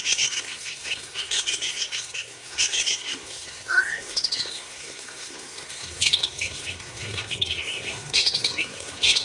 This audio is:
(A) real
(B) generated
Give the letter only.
B